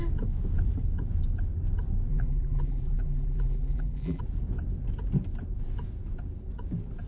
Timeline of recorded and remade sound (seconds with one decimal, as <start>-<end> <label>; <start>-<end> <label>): 0.0-2.1 recorded; 2.1-4.2 remade; 4.2-7.1 recorded